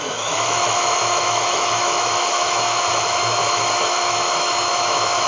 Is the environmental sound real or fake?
fake